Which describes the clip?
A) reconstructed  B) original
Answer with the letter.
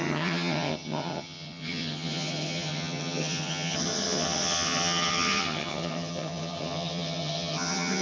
A